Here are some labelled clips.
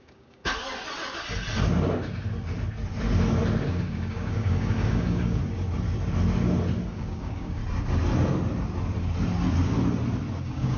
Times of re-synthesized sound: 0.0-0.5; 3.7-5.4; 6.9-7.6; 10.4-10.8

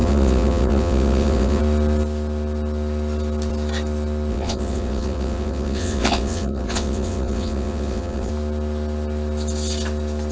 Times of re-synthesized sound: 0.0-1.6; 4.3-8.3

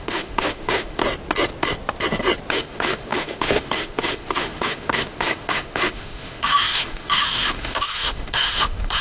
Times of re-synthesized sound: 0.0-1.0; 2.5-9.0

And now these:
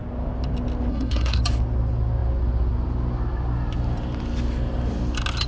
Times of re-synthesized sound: 0.9-1.4

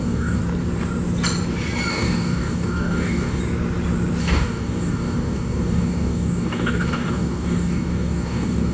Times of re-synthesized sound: 0.0-0.4; 1.9-3.4; 4.2-8.7

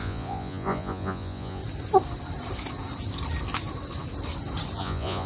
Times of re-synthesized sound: 0.0-1.6; 4.8-5.3

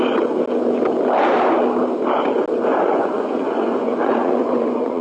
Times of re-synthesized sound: 2.7-5.0